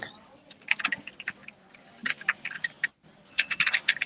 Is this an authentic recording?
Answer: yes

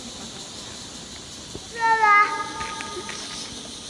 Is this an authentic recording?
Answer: yes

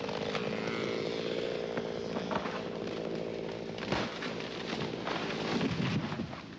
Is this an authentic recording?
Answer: yes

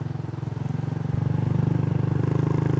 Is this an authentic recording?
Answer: yes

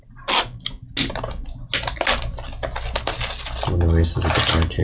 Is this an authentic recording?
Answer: yes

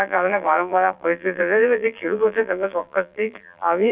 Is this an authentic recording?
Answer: no